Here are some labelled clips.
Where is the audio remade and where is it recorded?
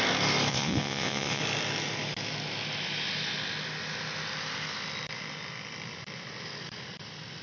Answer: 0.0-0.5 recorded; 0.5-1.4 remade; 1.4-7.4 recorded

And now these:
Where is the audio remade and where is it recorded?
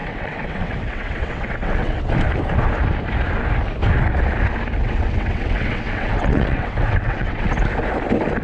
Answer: 0.0-2.1 remade; 2.1-4.8 recorded; 4.8-7.5 remade; 7.5-8.4 recorded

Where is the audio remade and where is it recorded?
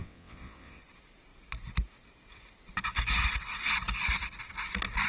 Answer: 0.0-0.8 remade; 0.8-5.1 recorded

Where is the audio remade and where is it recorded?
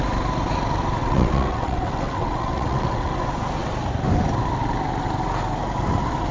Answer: 0.0-1.0 recorded; 1.0-3.2 remade; 3.2-6.3 recorded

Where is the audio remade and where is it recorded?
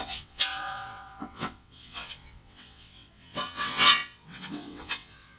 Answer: 0.0-5.4 remade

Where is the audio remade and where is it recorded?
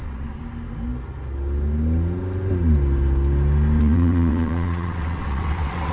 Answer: 0.0-0.4 remade; 0.4-3.8 recorded; 3.8-5.9 remade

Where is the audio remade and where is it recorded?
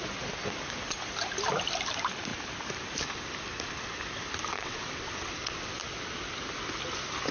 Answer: 0.0-4.5 recorded; 4.5-5.8 remade; 5.8-7.3 recorded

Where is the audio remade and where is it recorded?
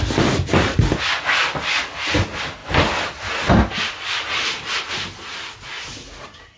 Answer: 0.0-6.6 recorded